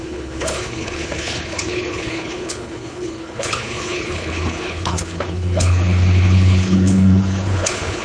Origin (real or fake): fake